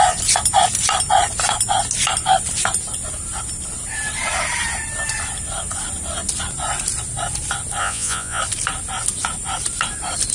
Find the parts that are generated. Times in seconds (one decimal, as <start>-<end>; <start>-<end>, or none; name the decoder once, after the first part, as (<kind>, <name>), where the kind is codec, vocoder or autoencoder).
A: 7.8-8.4 (vocoder, Vocos)